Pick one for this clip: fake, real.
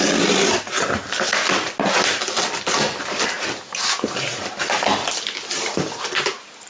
real